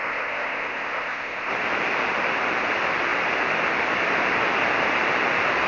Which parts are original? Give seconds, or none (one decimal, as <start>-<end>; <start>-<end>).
1.5-5.7